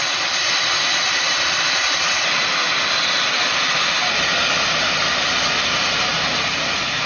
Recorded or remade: recorded